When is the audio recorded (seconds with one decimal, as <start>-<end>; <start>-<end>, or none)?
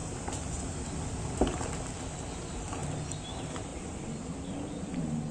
2.8-3.3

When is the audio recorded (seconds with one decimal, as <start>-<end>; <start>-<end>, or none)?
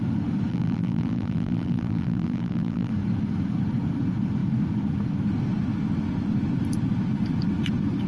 0.0-0.5; 2.9-8.1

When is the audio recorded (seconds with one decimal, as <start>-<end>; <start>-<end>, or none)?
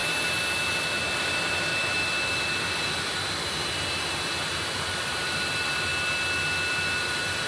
0.0-1.1; 1.7-2.6; 5.9-7.0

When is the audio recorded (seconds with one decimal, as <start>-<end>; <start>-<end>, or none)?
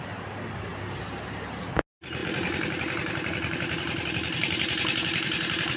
0.0-0.7; 1.8-2.2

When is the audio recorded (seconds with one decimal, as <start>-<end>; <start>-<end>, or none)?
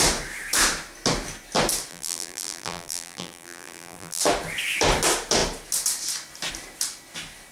0.0-1.9; 4.2-7.5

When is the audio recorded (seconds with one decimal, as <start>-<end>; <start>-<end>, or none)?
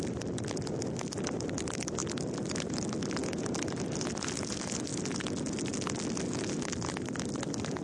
0.0-3.2; 4.1-7.8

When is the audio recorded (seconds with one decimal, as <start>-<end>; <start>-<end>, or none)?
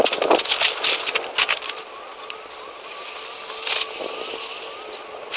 0.0-5.4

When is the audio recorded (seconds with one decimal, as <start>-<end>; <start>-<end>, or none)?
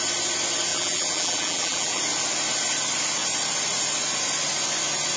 0.0-0.7; 2.0-5.2